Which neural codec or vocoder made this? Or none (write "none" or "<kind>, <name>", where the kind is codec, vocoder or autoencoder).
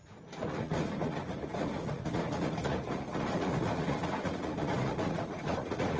vocoder, Vocos